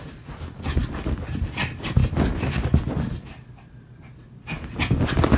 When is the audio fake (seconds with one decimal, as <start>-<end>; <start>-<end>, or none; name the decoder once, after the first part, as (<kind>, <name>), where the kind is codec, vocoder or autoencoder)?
none